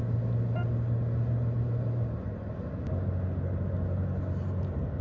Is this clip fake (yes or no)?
no